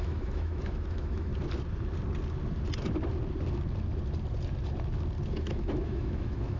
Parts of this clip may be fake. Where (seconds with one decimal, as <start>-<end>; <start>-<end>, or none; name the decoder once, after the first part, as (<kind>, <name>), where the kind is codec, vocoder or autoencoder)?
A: 0.0-1.3 (autoencoder, DAC-VAE); 5.3-6.6

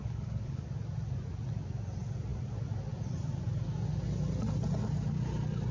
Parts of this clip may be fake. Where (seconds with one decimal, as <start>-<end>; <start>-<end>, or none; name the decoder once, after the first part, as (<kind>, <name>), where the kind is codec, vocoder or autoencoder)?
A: 0.0-0.6 (codec, HILCodec)

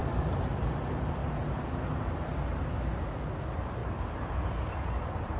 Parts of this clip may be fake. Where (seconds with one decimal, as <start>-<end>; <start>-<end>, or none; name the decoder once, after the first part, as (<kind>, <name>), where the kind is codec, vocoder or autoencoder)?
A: 0.0-1.2 (vocoder, BigVGAN v2); 3.1-5.4

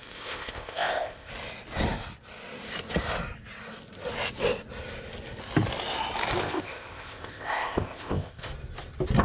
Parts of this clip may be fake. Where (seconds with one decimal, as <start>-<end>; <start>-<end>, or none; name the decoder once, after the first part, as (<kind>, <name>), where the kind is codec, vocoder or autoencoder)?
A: 0.0-1.3 (codec, ZipCodec); 6.4-8.5

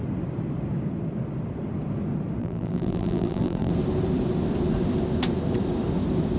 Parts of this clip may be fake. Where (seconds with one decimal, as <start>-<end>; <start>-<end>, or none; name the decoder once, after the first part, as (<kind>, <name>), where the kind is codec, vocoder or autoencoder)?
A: 2.4-3.7 (vocoder, BigVGAN v2)